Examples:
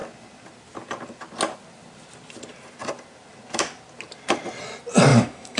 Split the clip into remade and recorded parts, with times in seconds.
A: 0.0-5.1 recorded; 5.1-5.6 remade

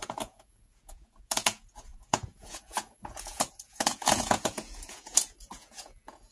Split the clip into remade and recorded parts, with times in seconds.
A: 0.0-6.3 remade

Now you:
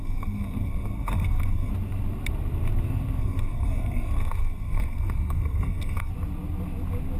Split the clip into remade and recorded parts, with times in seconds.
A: 0.0-1.7 remade; 1.7-3.2 recorded; 3.2-6.1 remade; 6.1-7.2 recorded